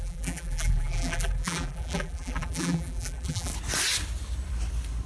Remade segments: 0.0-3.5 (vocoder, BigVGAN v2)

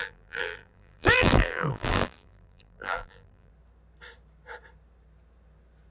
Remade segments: 0.0-3.5 (vocoder, BigVGAN v2)